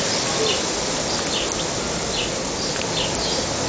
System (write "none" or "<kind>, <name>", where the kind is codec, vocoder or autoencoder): none